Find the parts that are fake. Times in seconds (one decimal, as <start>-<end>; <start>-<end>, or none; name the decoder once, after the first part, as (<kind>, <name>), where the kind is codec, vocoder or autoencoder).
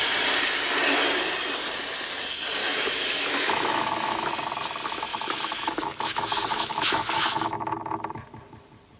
2.6-4.3 (autoencoder, DAC-VAE); 5.1-7.6